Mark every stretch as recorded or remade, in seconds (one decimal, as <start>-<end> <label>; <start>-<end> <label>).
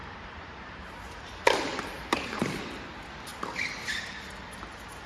0.0-2.6 remade; 2.6-5.1 recorded